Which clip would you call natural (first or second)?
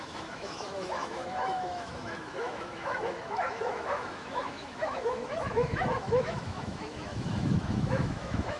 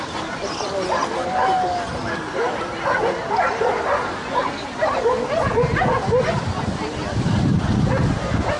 second